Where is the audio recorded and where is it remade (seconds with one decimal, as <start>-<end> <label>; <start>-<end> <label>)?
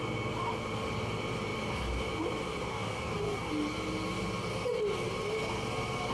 0.0-2.7 recorded; 2.7-3.5 remade; 3.5-6.1 recorded